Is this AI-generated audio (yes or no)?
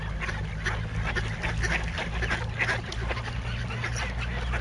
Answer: no